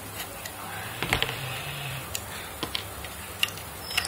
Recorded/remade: recorded